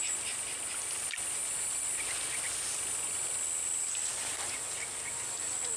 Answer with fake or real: real